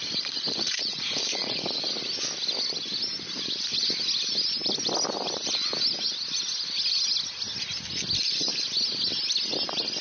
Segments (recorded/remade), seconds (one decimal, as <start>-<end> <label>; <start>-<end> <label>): 0.0-1.6 remade; 1.6-10.0 recorded